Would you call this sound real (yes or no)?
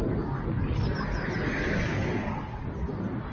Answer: yes